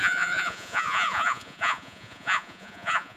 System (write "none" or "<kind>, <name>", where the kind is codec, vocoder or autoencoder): vocoder, Vocos